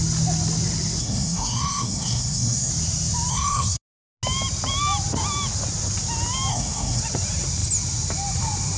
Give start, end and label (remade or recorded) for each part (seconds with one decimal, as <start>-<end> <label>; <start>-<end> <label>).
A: 0.0-1.0 recorded; 1.0-2.7 remade; 2.7-3.3 recorded; 3.3-3.8 remade; 3.8-6.5 recorded; 6.5-7.0 remade; 7.0-8.8 recorded